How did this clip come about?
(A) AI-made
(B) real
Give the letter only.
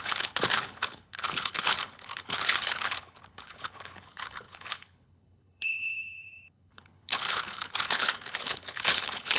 A